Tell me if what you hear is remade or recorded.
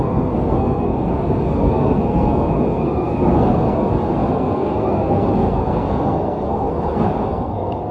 remade